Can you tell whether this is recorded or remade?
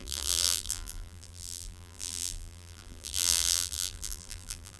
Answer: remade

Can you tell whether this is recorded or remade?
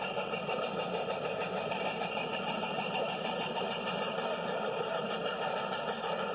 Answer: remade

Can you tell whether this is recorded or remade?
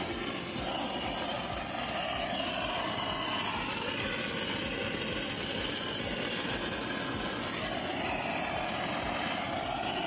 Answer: recorded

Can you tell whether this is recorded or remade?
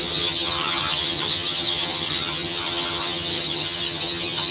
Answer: remade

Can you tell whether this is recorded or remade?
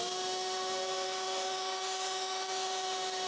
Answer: remade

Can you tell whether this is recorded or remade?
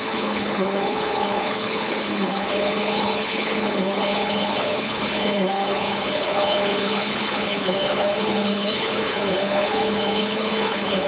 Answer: remade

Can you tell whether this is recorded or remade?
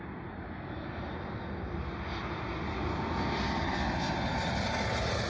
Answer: recorded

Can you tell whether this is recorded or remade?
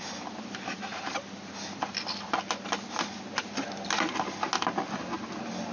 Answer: recorded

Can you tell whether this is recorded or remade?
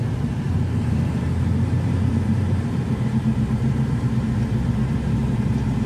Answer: remade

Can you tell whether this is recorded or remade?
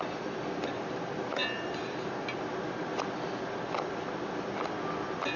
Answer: recorded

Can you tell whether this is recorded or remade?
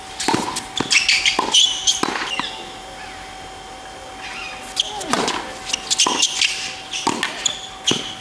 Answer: recorded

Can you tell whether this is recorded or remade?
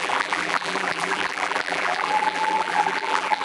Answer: remade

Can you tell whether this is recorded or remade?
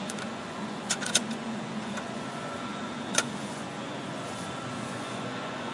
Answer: remade